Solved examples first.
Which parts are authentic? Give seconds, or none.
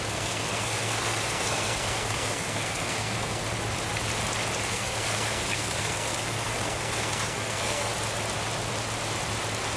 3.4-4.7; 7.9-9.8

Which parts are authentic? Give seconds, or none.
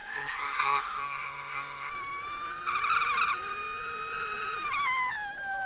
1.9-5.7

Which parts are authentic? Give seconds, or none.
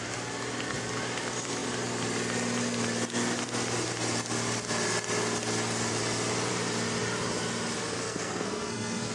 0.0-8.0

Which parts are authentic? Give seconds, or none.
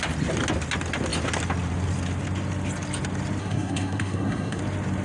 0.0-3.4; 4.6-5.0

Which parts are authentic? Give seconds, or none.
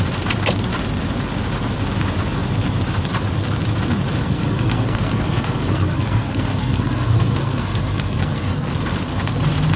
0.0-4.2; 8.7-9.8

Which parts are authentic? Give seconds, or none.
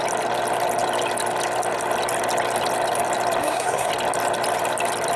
0.0-3.4; 3.9-5.2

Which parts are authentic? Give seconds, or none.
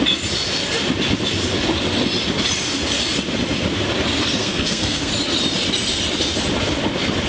0.0-4.4; 5.1-7.3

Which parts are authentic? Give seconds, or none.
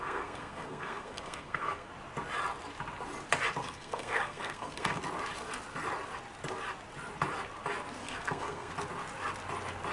1.9-3.6; 5.0-8.0; 8.7-9.9